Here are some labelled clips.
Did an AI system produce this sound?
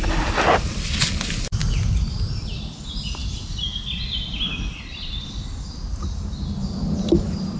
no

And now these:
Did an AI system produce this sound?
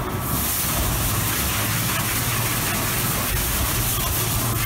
no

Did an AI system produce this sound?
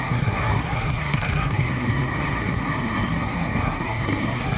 yes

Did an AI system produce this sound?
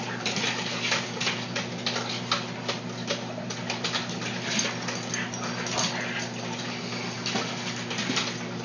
no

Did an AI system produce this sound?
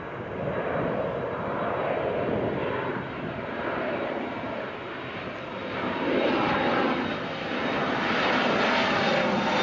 no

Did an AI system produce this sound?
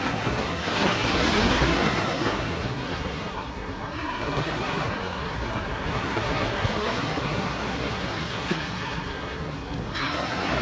yes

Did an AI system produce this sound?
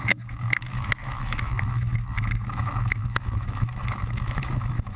yes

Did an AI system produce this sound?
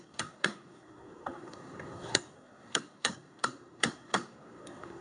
yes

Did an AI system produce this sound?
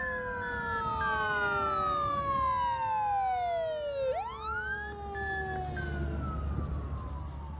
no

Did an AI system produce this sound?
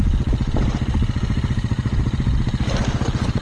no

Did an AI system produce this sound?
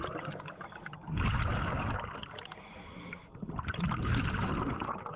no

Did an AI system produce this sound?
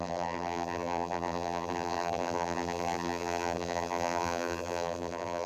yes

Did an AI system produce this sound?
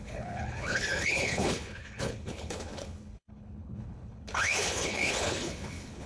yes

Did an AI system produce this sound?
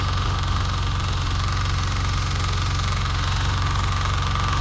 yes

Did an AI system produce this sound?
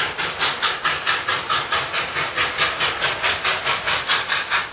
no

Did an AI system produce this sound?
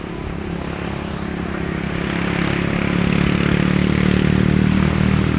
no